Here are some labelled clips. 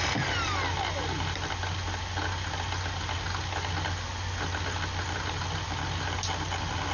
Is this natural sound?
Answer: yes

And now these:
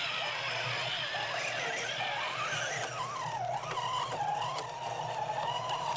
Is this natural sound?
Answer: yes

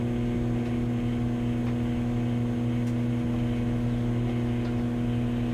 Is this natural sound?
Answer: yes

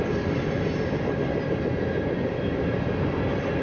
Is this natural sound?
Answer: yes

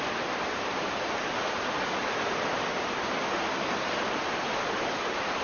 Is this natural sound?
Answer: yes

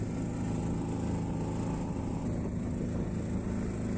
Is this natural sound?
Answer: yes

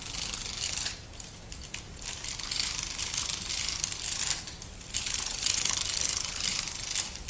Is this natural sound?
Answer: yes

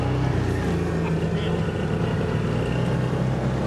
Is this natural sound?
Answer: yes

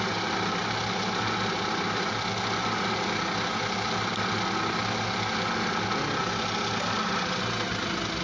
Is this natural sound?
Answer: yes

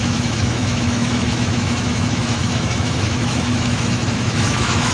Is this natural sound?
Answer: no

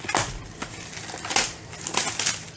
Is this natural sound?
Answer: yes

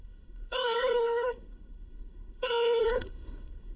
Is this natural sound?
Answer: no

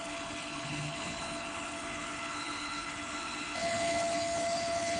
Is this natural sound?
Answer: no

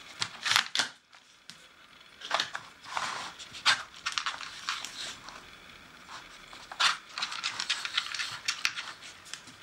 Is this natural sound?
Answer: yes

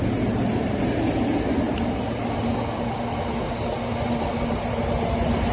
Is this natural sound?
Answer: yes